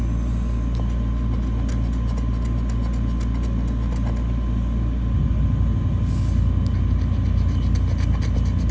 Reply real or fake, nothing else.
real